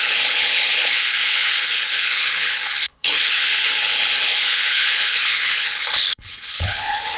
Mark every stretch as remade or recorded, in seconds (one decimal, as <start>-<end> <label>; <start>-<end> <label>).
0.0-7.2 remade